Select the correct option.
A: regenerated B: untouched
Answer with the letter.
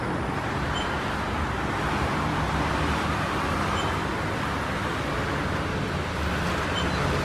B